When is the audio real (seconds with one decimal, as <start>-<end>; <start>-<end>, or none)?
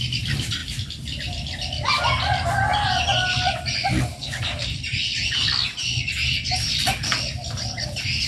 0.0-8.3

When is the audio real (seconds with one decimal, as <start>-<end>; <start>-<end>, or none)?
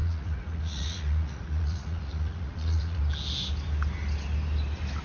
3.0-5.0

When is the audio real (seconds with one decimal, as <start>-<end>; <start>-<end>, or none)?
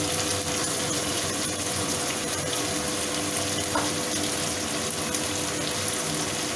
0.0-0.6; 2.7-6.6